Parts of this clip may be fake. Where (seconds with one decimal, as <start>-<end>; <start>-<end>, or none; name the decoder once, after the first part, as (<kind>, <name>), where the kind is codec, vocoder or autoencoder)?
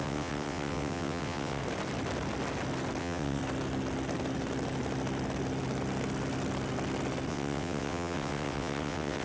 0.0-1.6 (vocoder, WaveNeXt); 3.0-3.4; 7.3-9.2